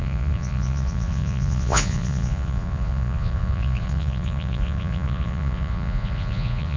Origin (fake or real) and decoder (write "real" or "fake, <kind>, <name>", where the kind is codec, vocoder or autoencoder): fake, vocoder, Vocos